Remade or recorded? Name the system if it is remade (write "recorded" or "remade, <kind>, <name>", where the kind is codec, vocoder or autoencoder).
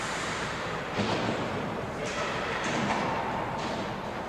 remade, vocoder, BigVGAN v2